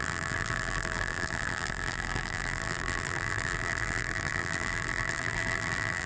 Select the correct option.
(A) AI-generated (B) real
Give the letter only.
A